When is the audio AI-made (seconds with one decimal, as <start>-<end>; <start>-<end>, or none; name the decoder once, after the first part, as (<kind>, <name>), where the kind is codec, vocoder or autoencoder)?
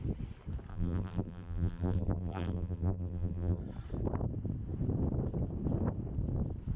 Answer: 0.7-3.6 (vocoder, BigVGAN v2)